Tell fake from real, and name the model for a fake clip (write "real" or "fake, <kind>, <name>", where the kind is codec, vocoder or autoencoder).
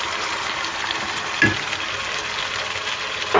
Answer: real